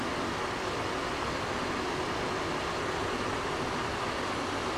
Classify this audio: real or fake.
real